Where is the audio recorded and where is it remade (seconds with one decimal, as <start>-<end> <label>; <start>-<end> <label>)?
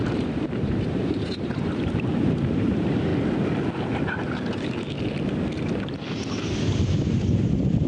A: 0.0-3.1 remade; 3.1-7.9 recorded